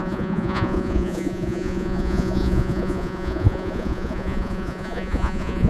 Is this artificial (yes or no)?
yes